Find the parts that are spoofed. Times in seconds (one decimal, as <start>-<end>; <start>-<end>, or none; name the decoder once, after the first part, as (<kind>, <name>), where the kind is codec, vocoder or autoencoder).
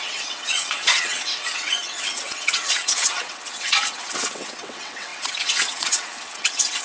0.0-6.8 (vocoder, WaveNeXt)